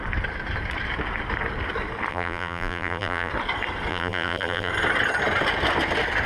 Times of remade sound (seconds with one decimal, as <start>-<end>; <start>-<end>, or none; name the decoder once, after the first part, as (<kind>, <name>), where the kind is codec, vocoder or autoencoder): 2.1-3.3 (vocoder, BigVGAN v2); 3.9-4.7